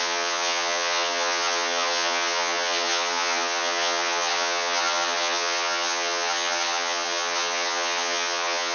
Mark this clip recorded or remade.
remade